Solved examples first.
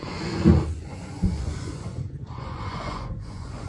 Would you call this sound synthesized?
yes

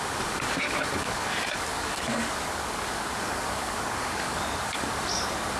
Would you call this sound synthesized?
yes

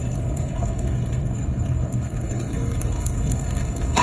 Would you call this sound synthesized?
yes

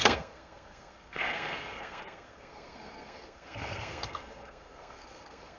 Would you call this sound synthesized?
yes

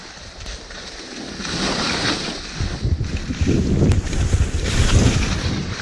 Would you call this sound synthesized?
yes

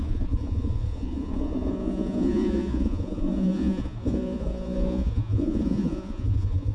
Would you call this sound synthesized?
yes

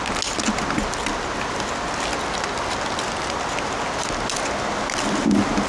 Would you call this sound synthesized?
no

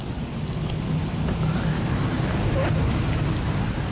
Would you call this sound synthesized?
no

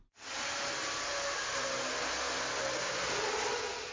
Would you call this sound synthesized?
no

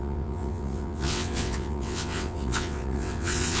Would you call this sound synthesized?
yes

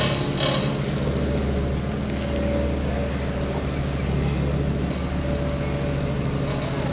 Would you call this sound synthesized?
no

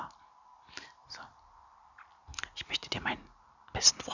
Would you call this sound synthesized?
no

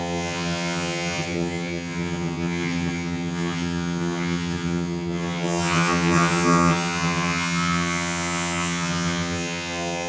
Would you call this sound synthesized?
yes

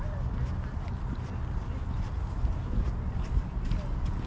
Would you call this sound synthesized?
no